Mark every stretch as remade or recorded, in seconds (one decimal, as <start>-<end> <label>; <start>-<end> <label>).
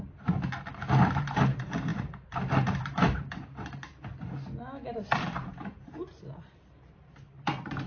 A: 0.0-3.9 remade; 3.9-5.2 recorded; 5.2-7.9 remade